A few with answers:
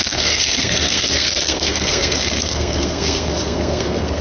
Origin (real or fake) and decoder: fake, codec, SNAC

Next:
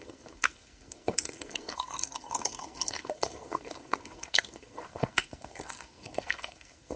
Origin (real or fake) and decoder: fake, codec, SNAC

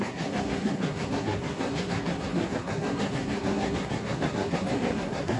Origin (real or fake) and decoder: fake, codec, SNAC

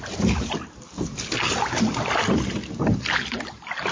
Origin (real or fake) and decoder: real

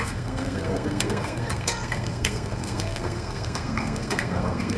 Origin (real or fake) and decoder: fake, codec, SNAC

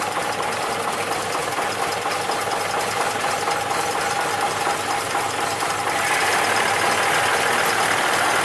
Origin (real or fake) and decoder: real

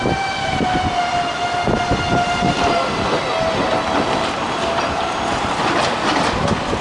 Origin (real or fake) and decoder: real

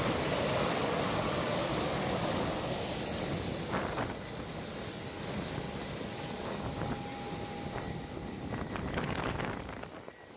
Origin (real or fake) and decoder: real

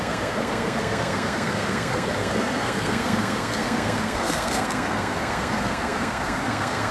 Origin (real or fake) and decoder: fake, codec, SNAC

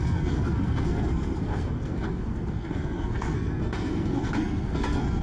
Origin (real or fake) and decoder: fake, codec, SNAC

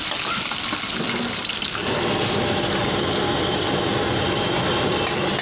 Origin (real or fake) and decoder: real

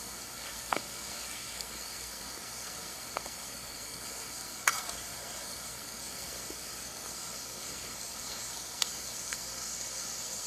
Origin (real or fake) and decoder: fake, codec, SNAC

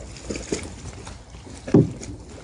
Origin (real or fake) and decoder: real